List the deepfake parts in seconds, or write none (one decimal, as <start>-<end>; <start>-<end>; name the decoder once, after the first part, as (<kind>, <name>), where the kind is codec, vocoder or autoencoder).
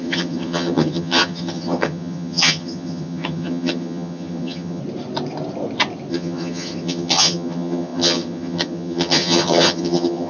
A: 0.0-4.8 (vocoder, HiFi-GAN); 6.1-10.3